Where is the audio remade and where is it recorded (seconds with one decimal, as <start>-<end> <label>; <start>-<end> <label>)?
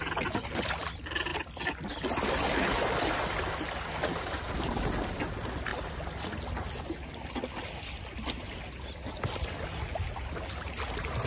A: 0.0-11.3 recorded